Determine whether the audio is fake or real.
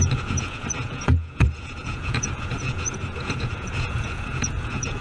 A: fake